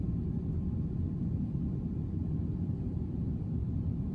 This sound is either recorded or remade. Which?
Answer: recorded